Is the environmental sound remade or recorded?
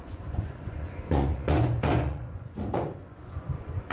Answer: remade